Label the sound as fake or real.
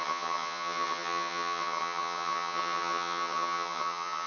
fake